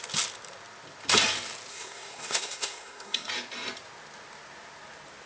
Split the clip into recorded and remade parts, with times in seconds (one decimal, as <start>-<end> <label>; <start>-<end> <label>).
0.0-1.7 recorded; 1.7-3.3 remade; 3.3-5.3 recorded